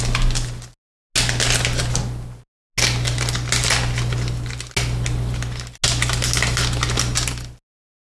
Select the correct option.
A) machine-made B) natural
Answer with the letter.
B